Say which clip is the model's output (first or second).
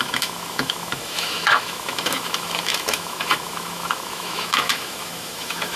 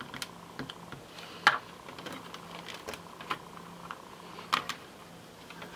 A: first